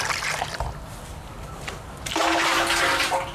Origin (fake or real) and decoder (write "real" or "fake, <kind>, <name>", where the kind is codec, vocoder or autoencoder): real